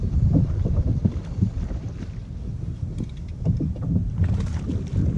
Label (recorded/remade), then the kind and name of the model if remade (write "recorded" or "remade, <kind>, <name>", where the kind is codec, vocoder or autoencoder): recorded